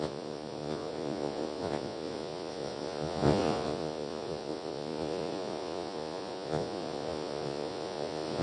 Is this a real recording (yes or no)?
no